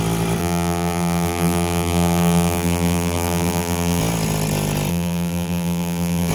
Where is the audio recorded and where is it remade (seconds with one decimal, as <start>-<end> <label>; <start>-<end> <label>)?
0.0-0.4 recorded; 0.4-4.0 remade; 4.0-4.9 recorded; 4.9-6.3 remade